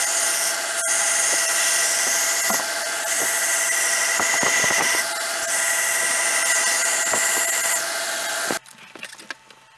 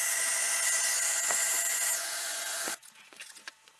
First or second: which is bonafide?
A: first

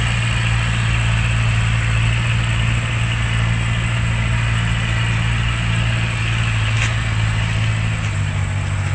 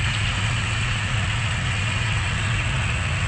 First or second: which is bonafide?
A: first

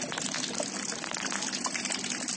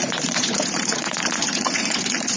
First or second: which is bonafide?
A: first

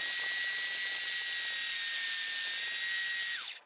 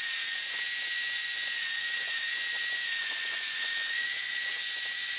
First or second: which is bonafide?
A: first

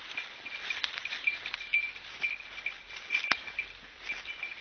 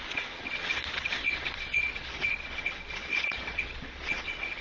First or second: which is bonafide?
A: first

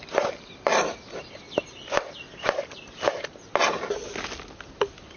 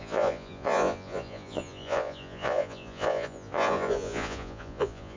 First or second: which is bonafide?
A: first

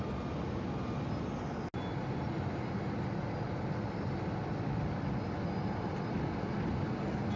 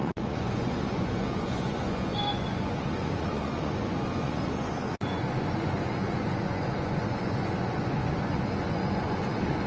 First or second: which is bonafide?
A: first